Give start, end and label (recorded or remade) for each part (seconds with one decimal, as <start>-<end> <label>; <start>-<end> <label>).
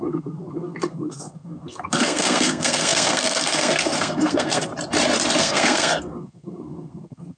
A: 0.0-4.7 remade; 4.7-5.4 recorded; 5.4-7.4 remade